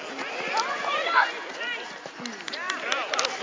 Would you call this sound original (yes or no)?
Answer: yes